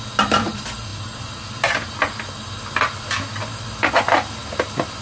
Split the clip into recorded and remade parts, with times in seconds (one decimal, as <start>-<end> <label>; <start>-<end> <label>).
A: 0.0-5.0 recorded

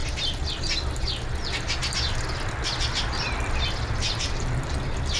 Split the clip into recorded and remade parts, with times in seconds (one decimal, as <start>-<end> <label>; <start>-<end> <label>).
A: 0.0-5.2 recorded

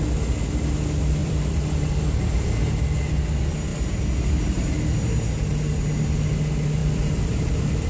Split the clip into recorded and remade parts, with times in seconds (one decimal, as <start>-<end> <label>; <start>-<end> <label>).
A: 0.0-1.2 recorded; 1.2-1.9 remade; 1.9-6.8 recorded; 6.8-7.9 remade

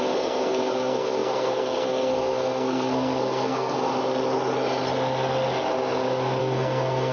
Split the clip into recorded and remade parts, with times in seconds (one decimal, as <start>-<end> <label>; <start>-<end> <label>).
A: 0.0-3.9 remade; 3.9-6.4 recorded; 6.4-7.1 remade